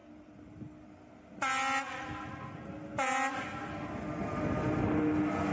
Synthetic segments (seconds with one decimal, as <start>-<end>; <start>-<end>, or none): none